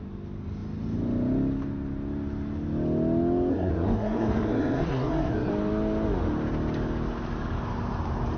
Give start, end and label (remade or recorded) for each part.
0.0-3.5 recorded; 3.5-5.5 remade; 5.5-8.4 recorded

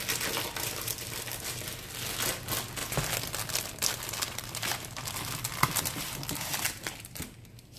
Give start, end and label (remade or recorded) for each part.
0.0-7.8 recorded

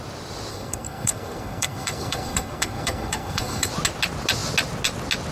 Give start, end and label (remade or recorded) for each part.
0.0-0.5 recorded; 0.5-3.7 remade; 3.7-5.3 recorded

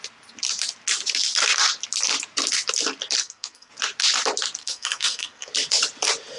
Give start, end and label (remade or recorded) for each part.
0.0-3.2 recorded; 3.2-3.7 remade; 3.7-4.6 recorded; 4.6-5.5 remade; 5.5-6.4 recorded